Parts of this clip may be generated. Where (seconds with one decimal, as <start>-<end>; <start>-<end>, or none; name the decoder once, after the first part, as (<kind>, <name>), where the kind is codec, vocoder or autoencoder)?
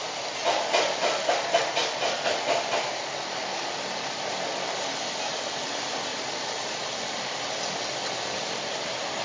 none